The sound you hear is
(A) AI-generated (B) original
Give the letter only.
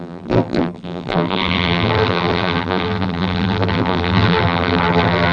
A